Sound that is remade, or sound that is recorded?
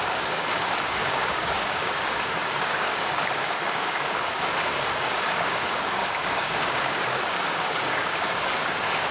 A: remade